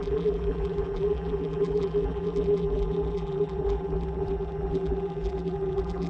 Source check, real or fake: fake